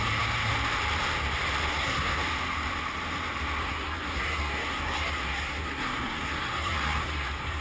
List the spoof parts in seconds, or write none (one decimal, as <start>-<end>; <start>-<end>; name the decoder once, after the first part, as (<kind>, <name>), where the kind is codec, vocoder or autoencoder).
0.0-0.5 (codec, SNAC); 1.7-2.2; 3.6-7.6